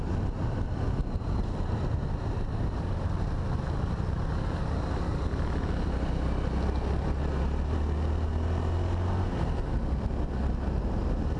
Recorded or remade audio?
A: recorded